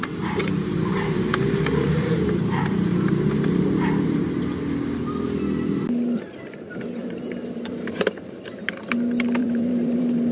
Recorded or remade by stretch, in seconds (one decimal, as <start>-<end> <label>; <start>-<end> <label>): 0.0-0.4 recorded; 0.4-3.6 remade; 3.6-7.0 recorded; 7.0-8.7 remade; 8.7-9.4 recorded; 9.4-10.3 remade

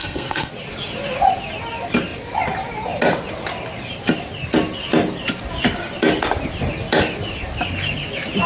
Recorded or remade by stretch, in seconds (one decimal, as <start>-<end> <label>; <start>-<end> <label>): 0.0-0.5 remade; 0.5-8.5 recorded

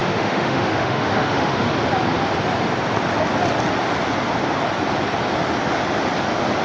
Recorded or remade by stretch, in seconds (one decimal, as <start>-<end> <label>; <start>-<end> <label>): 0.0-1.7 remade; 1.7-6.6 recorded

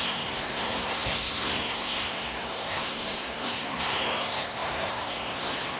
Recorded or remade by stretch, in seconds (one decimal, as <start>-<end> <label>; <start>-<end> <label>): 0.0-5.8 remade

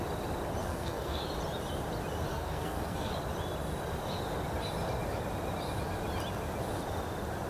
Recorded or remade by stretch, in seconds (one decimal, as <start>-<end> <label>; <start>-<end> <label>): 0.0-0.6 recorded; 0.6-1.2 remade; 1.2-2.3 recorded; 2.3-3.1 remade; 3.1-7.5 recorded